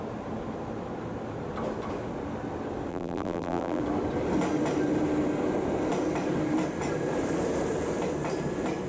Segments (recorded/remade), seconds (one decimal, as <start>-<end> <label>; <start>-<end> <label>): 0.0-2.9 recorded; 2.9-3.8 remade; 3.8-8.9 recorded